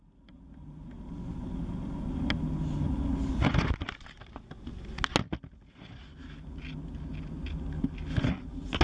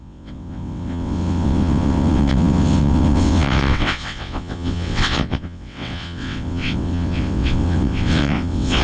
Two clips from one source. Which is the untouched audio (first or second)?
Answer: first